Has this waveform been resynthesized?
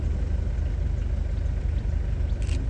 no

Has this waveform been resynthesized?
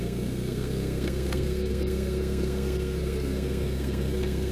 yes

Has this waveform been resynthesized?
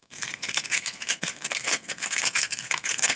yes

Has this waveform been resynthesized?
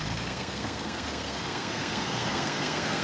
yes